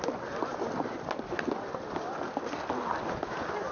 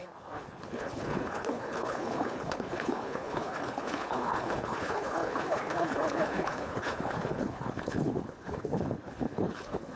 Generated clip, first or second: second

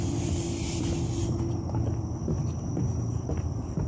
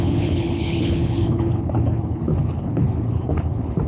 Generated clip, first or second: second